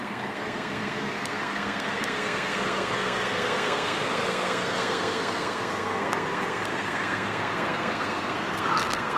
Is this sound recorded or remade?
remade